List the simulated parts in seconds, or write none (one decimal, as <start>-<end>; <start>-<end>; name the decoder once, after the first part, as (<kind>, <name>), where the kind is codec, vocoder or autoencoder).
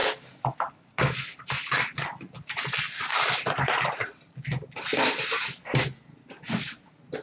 none